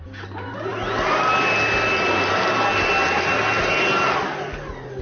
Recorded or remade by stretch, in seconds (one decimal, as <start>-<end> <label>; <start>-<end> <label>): 0.0-5.0 recorded